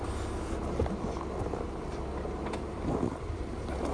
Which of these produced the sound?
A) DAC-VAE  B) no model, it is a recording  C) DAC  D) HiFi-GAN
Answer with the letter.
B